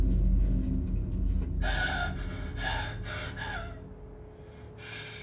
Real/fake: real